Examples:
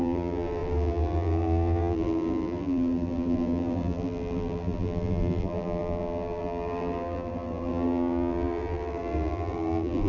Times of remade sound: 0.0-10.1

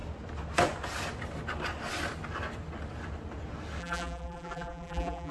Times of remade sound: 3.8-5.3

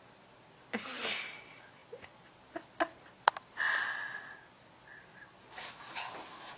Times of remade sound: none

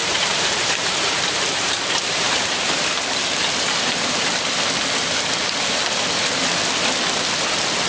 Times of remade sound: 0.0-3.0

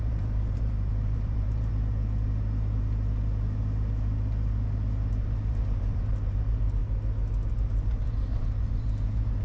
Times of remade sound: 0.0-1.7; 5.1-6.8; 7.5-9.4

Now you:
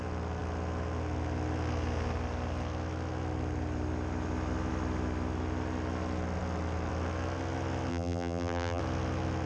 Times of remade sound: 7.9-8.8